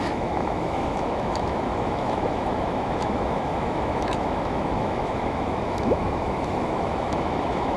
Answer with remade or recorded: remade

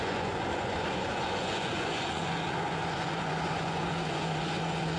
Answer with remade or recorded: remade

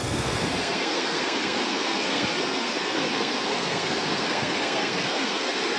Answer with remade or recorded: remade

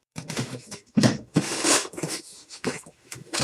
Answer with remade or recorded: remade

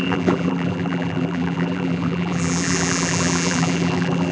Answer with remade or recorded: remade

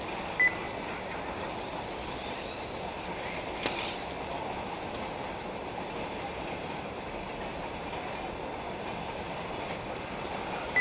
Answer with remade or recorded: recorded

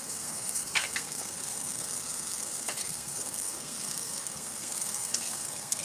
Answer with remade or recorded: remade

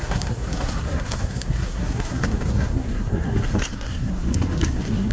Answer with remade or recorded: remade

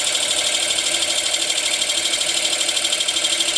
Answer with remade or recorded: recorded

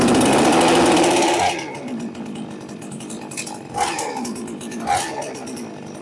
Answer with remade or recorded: recorded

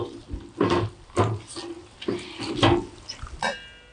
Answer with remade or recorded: recorded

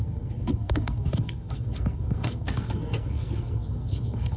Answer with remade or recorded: remade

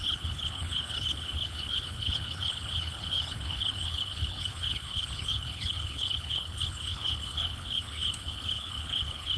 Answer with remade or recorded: remade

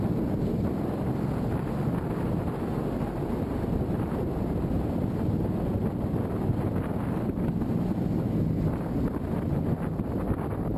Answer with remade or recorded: recorded